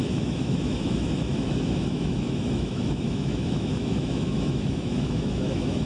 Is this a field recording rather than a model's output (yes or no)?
no